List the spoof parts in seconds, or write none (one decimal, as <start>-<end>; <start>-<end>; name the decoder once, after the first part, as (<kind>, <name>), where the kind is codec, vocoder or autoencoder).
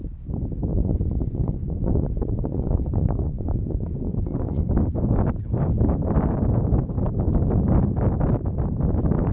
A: 0.7-4.6 (vocoder, Vocos)